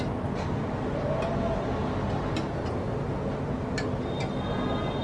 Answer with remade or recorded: recorded